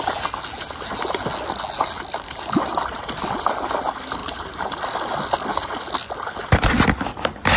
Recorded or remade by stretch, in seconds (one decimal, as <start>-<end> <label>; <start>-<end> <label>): 0.0-4.2 recorded; 4.2-4.7 remade; 4.7-7.6 recorded